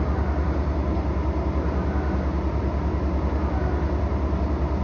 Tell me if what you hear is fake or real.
real